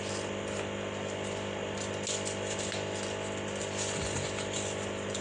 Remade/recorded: recorded